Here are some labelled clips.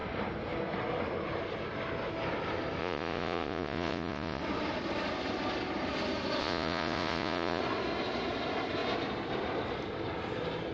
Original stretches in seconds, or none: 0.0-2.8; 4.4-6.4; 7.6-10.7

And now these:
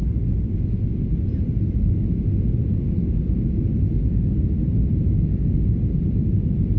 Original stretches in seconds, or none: 0.0-6.8

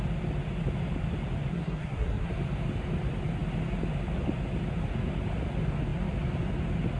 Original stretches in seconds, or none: 0.0-1.5; 2.3-7.0